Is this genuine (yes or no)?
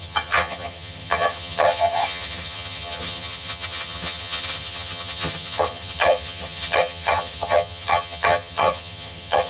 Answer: no